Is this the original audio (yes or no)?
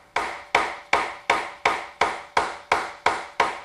yes